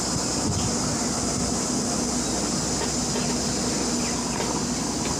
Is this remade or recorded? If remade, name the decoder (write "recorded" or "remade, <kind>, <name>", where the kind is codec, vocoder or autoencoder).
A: recorded